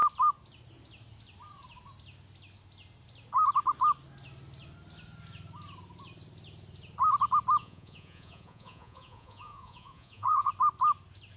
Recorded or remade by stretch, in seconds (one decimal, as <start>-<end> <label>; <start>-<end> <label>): 0.0-7.6 recorded; 7.6-10.5 remade; 10.5-11.4 recorded